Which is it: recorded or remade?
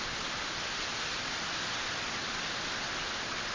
recorded